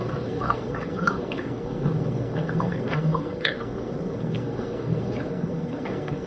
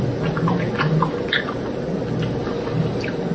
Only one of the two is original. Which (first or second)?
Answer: second